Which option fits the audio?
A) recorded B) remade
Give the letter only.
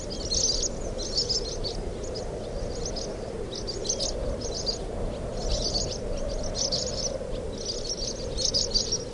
A